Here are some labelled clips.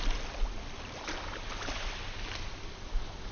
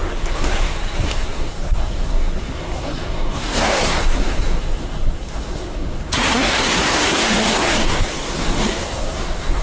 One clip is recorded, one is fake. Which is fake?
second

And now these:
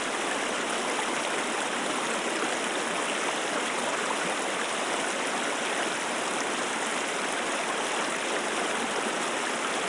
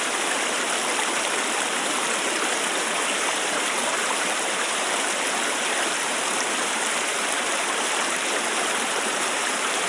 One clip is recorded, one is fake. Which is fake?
second